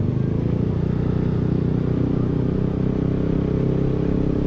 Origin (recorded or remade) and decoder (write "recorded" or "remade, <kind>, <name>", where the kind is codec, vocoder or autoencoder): recorded